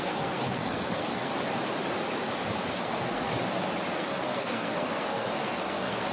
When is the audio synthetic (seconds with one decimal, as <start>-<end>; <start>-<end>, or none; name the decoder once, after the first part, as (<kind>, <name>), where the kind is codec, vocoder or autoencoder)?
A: 0.0-1.3 (codec, SNAC); 2.7-3.3; 3.9-6.1

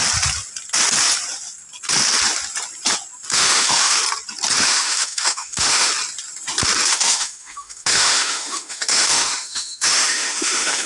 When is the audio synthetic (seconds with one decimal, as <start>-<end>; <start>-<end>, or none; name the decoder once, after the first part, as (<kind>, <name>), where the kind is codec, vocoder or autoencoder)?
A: 3.3-4.0 (autoencoder, DAC-VAE); 4.6-5.9; 6.9-10.9

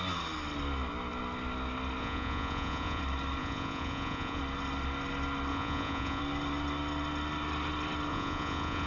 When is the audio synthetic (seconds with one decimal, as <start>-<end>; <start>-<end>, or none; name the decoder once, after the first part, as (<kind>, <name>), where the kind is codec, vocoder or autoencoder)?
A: 2.0-3.0 (vocoder, Vocos); 3.4-4.4; 5.5-6.2; 8.1-8.9

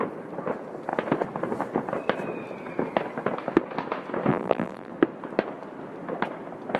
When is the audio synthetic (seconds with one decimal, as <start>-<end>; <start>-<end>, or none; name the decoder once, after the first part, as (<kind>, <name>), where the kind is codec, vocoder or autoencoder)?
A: 4.3-4.9 (vocoder, BigVGAN v2)

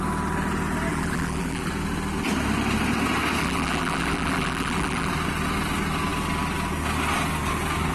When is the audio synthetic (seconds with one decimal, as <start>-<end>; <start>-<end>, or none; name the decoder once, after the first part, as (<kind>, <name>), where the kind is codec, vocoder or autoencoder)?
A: 0.9-1.7 (vocoder, BigVGAN v2); 3.4-5.1

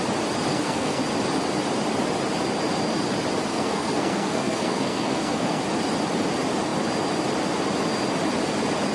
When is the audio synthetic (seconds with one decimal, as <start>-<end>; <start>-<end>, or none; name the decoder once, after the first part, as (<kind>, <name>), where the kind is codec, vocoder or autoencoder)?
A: 0.5-1.0 (codec, SNAC); 3.5-5.6

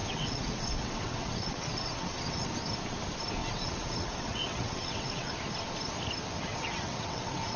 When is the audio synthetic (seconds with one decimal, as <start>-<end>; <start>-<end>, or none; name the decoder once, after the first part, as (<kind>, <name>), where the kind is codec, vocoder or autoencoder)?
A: 0.0-2.5 (vocoder, WaveNeXt); 3.4-5.3; 6.5-7.6

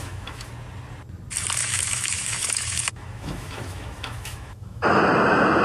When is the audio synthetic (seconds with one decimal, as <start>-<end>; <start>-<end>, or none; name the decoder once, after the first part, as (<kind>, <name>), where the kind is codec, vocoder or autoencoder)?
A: 0.0-0.5 (autoencoder, DAC-VAE); 1.6-5.0